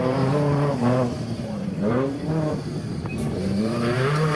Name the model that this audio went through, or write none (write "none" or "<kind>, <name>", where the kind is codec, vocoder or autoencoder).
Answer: vocoder, BigVGAN v2